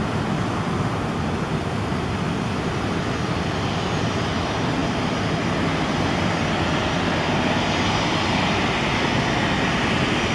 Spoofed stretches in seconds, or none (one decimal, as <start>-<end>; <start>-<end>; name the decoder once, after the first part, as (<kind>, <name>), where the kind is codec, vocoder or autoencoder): none